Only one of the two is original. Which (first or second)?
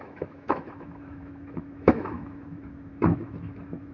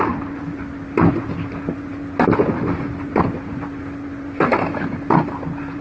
second